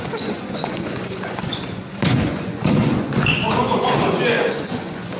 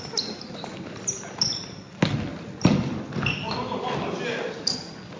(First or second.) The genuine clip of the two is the second